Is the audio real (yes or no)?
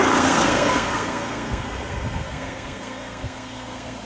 no